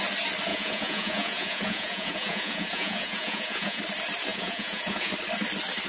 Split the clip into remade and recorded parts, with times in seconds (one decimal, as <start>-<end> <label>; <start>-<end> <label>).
0.0-0.5 recorded; 0.5-3.8 remade; 3.8-4.3 recorded; 4.3-5.1 remade; 5.1-5.9 recorded